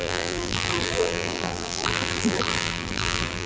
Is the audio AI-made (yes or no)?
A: yes